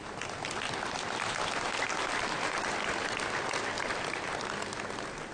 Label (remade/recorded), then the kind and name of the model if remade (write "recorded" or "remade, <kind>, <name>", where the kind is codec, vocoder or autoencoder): recorded